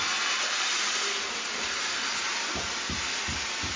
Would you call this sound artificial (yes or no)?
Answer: no